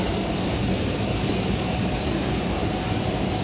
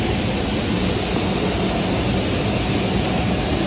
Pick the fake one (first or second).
first